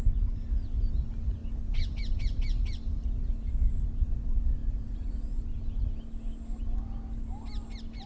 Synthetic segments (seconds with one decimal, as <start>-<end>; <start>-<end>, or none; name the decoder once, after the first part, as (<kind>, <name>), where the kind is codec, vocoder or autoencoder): none

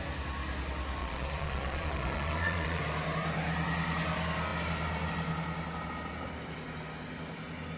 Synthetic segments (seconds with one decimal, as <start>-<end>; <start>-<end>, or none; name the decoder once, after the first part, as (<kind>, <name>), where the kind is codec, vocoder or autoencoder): 1.0-2.8 (vocoder, Vocos)